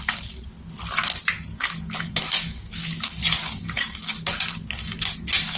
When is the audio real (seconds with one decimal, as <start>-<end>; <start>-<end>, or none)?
0.0-1.5; 3.2-3.6; 5.1-5.6